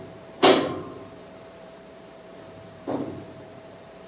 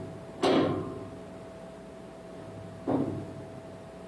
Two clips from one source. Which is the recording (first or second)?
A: second